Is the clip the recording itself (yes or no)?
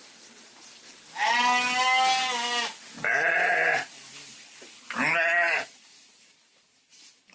yes